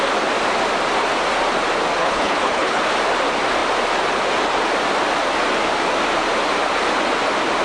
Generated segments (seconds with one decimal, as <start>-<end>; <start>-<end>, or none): 2.0-2.8